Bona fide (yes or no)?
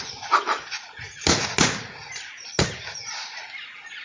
yes